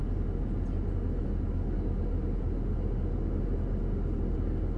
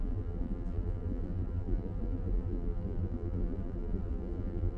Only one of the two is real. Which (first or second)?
first